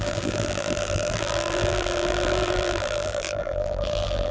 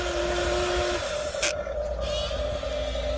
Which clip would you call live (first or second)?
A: second